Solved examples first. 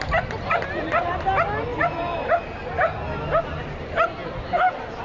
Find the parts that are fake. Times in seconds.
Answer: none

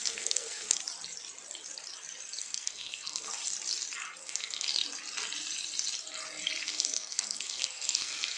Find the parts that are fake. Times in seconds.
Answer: 0.0-0.8 (codec, SNAC); 2.4-3.4; 4.2-4.7; 6.6-8.4

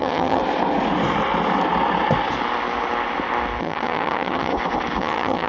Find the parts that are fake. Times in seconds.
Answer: 0.0-0.4 (vocoder, HiFi-GAN); 3.6-4.5; 5.0-5.5

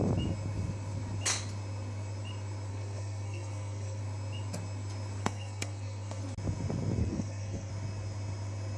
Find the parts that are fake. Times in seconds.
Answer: 2.7-4.0 (codec, SNAC); 5.2-6.2; 7.0-7.7